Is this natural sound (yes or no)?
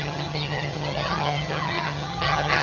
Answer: no